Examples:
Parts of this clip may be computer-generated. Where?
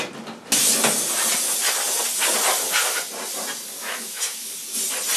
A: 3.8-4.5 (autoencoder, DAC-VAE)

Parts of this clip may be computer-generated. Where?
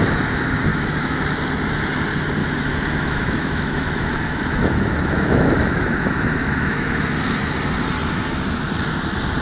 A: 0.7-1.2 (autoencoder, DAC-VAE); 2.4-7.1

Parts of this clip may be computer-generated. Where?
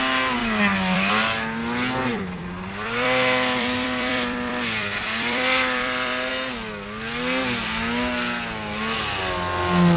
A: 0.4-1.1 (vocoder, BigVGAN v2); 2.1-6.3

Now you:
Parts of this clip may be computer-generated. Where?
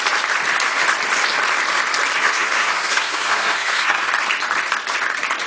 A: 2.2-4.1 (codec, SNAC)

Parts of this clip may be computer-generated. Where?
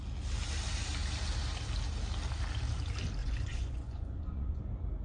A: 3.2-4.6 (vocoder, Vocos)